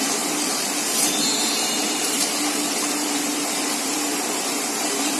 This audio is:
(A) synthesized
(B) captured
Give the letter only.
A